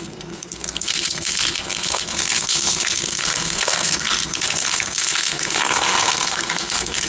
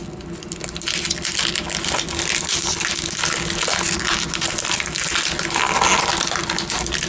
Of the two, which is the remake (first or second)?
first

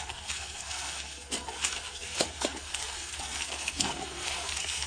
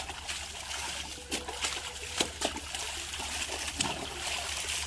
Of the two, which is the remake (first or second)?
first